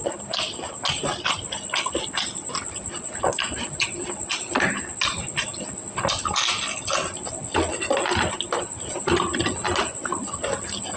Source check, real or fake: real